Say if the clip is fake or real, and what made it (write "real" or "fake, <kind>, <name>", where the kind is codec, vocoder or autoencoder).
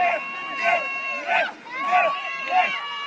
real